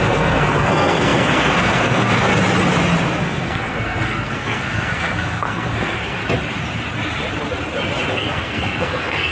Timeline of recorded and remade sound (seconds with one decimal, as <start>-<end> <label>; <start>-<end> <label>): 0.0-2.3 remade; 2.3-3.2 recorded; 3.2-6.2 remade; 6.2-8.1 recorded; 8.1-9.3 remade